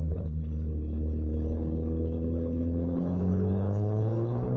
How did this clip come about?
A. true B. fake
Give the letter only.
B